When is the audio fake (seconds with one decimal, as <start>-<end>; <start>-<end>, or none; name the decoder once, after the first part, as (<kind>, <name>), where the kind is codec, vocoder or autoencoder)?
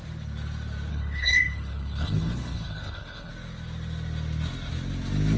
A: 0.9-3.3 (codec, HILCodec)